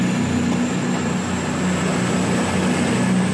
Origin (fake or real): real